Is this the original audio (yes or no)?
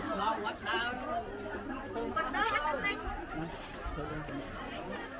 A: yes